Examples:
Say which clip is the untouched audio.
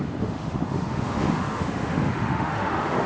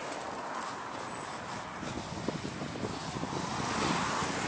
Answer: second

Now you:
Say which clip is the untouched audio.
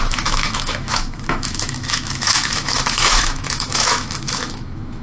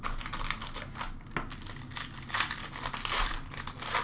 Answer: second